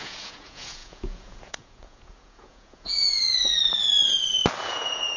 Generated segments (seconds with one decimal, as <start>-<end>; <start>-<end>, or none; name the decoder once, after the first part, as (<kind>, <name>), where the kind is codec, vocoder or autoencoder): 0.0-3.2 (vocoder, Vocos); 4.6-5.2